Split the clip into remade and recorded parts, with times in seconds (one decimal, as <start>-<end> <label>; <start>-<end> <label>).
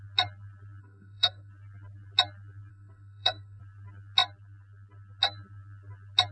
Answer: 0.0-0.8 recorded; 0.8-1.5 remade; 1.5-2.7 recorded; 2.7-3.6 remade; 3.6-6.3 recorded